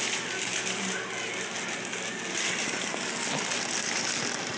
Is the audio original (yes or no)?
yes